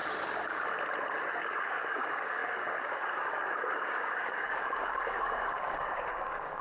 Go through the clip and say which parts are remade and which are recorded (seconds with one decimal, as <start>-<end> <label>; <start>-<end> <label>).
0.0-1.4 recorded; 1.4-6.6 remade